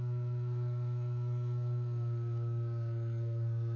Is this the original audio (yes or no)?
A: no